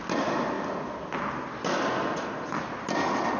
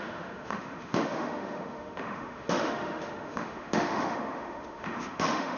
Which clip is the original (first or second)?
first